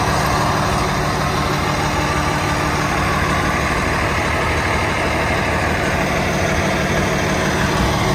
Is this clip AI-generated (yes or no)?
no